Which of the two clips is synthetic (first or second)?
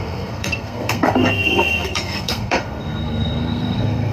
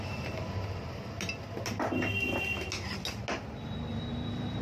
first